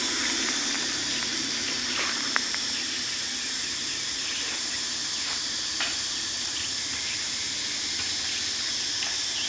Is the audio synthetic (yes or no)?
yes